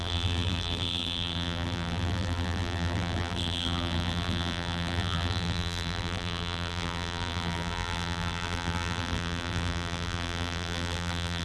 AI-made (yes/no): yes